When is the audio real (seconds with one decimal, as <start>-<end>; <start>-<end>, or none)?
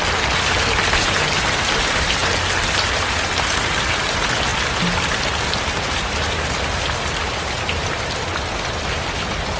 0.0-9.6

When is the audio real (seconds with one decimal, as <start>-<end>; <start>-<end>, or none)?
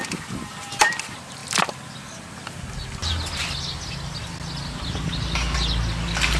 0.0-6.4